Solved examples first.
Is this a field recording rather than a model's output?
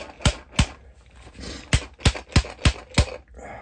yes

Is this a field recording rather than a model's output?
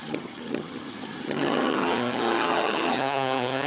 no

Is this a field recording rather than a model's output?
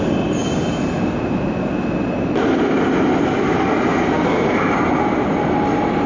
yes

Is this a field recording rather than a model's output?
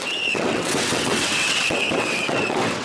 no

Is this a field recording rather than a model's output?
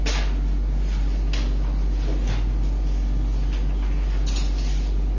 yes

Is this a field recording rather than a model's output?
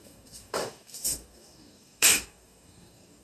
no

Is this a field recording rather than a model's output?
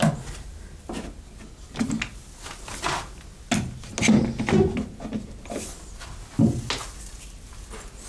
yes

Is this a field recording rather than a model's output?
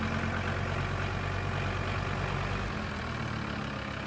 yes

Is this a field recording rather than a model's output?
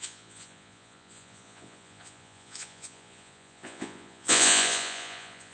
no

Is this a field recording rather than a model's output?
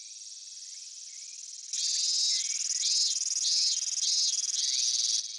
yes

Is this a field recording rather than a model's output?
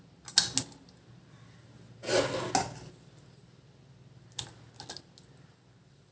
yes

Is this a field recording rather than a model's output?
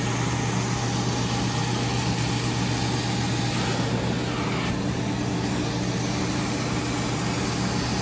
yes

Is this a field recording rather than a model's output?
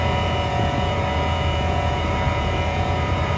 no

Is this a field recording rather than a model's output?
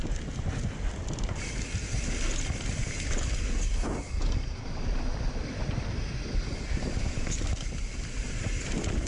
yes